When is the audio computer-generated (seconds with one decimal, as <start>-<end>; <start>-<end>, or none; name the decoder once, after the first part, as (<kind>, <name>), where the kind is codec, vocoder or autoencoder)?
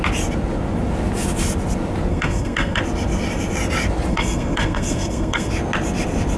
2.1-2.8 (codec, SNAC); 4.1-5.5